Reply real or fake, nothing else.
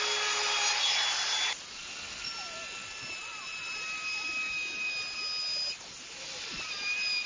real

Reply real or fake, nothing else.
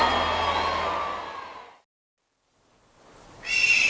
real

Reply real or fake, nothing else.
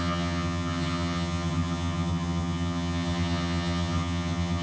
fake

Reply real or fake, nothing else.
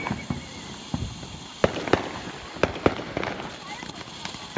real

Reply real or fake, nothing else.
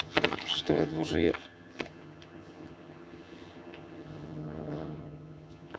fake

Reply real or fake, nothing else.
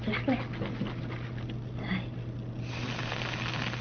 real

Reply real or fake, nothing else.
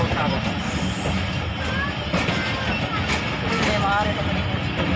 real